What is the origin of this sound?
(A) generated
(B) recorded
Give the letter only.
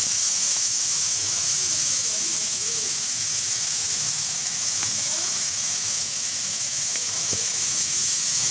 A